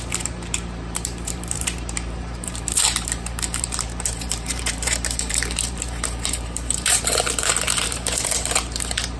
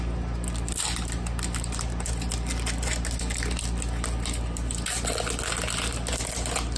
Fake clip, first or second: first